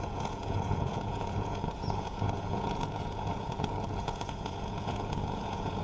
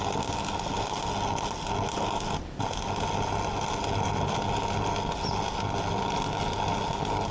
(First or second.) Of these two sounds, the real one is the second